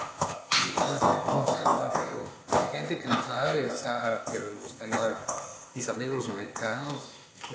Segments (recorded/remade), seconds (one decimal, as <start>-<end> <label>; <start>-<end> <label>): 0.0-7.5 remade